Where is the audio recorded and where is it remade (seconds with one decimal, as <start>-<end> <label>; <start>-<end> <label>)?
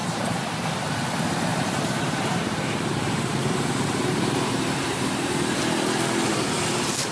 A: 0.0-0.7 remade; 0.7-1.5 recorded; 1.5-5.6 remade; 5.6-7.1 recorded